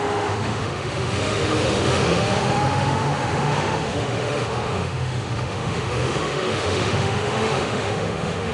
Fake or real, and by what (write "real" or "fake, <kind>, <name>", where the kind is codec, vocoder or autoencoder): fake, autoencoder, DAC-VAE